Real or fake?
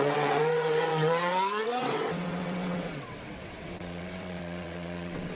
fake